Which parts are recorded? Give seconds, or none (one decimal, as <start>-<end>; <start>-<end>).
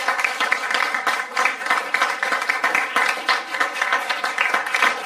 0.5-3.6; 4.1-5.1